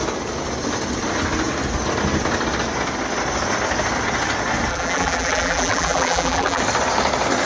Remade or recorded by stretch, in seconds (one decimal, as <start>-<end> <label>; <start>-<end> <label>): 0.0-4.7 recorded; 4.7-6.6 remade; 6.6-7.5 recorded